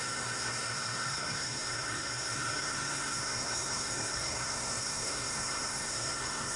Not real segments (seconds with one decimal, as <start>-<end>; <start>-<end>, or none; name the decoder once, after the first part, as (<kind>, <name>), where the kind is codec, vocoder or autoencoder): 0.0-6.6 (codec, SNAC)

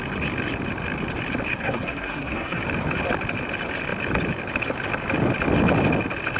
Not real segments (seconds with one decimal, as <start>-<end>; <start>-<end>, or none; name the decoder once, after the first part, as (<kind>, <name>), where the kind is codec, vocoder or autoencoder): 1.5-2.6 (codec, SNAC)

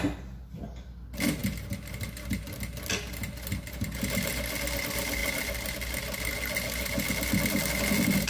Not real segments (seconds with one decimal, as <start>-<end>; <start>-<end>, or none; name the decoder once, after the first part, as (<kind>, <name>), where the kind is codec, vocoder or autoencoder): none

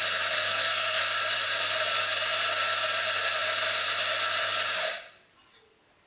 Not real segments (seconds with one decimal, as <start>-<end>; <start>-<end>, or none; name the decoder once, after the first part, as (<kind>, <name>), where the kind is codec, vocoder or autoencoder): 0.4-1.0 (codec, SNAC)

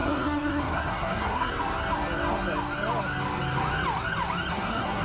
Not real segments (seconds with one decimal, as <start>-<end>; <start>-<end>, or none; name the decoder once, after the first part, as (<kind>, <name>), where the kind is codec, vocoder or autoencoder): 0.0-1.5 (codec, SNAC); 4.5-5.0

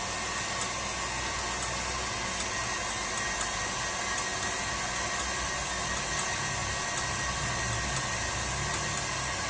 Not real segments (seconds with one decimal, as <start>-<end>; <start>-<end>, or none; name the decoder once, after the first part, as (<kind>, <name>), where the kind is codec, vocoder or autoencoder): none

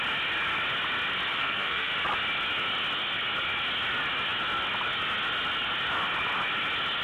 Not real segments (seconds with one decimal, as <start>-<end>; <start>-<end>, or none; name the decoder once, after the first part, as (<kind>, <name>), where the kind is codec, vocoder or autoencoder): 1.3-1.9 (codec, SNAC)